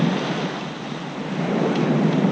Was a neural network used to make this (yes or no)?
no